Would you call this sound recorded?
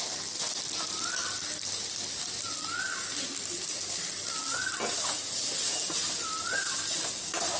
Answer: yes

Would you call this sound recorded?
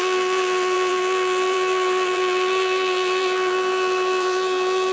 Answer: no